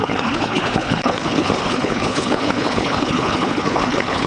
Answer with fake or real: fake